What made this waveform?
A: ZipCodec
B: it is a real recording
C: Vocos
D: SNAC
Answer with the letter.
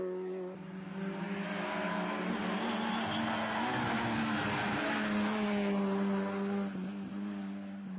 B